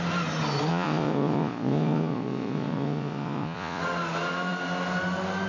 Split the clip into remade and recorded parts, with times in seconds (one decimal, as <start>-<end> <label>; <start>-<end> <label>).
0.0-0.7 recorded; 0.7-3.8 remade; 3.8-5.5 recorded